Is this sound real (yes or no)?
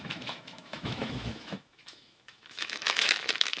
no